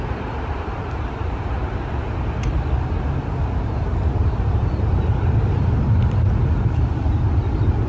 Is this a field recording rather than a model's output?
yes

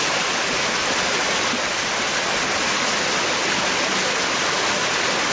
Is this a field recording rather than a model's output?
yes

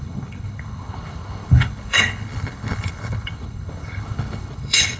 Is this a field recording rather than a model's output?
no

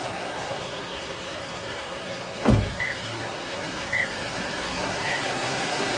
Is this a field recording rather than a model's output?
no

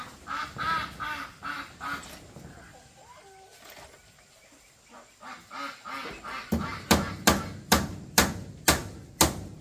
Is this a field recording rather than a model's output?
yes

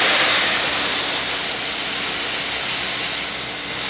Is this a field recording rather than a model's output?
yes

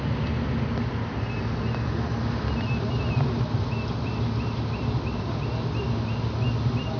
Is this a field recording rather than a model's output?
yes